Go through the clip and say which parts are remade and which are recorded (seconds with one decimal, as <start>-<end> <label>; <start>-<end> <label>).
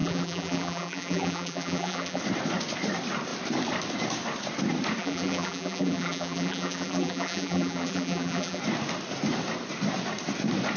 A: 0.0-2.2 remade; 2.2-5.0 recorded; 5.0-8.6 remade; 8.6-10.8 recorded